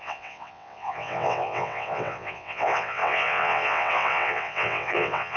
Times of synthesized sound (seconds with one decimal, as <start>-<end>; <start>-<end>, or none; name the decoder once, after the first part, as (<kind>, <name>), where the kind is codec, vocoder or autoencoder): 0.0-5.4 (vocoder, WaveNeXt)